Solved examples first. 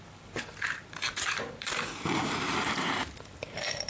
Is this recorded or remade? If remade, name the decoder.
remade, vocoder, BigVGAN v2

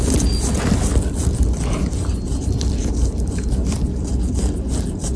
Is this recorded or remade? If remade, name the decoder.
recorded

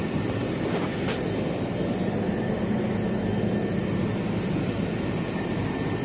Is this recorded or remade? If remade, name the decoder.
recorded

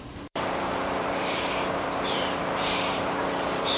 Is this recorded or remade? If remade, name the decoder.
remade, vocoder, BigVGAN v2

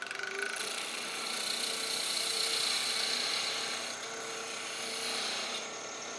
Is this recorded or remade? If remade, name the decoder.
recorded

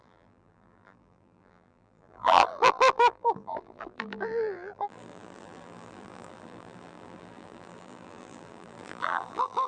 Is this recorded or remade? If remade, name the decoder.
remade, vocoder, BigVGAN v2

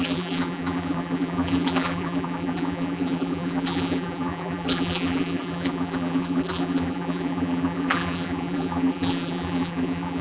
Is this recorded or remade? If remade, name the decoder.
remade, vocoder, BigVGAN v2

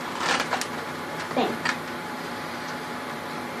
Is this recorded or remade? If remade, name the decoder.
remade, vocoder, BigVGAN v2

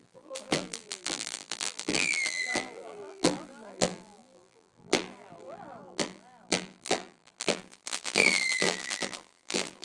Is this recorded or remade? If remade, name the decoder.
remade, vocoder, BigVGAN v2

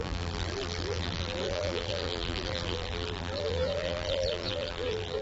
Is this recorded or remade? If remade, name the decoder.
remade, vocoder, BigVGAN v2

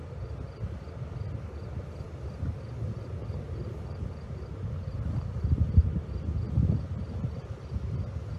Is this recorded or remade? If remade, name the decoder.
recorded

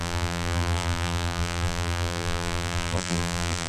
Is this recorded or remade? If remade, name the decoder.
remade, vocoder, BigVGAN v2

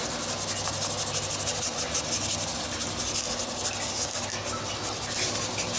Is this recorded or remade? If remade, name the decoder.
recorded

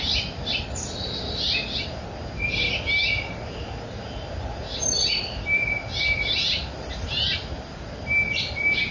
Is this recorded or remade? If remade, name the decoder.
recorded